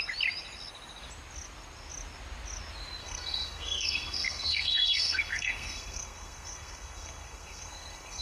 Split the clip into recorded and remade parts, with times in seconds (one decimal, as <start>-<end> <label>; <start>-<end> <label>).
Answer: 0.0-3.0 recorded; 3.0-8.2 remade